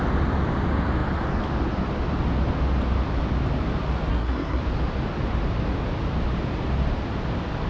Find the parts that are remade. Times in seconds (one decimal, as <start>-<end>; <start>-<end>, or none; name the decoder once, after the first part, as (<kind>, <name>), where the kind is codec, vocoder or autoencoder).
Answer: 4.1-4.6 (codec, SNAC)